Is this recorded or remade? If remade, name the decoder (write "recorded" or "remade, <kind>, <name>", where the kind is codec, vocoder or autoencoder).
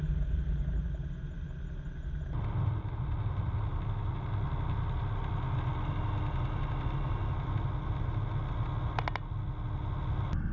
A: recorded